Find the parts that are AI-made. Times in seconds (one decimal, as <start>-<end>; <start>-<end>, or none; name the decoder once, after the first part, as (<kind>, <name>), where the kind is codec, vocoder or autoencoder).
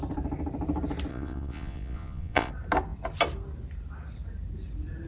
1.1-2.5 (vocoder, Vocos)